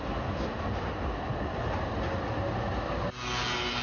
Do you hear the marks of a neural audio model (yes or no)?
no